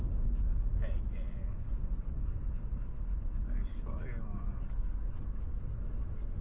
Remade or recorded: recorded